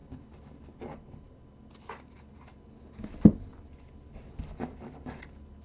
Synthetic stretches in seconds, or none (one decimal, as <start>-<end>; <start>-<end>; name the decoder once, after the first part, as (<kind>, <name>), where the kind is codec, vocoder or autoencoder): none